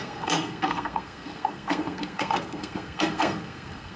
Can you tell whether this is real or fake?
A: fake